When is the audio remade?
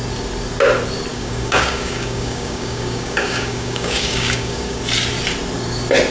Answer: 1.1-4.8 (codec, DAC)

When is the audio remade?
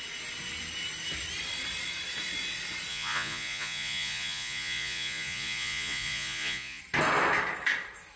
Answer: 2.9-6.8 (vocoder, Vocos)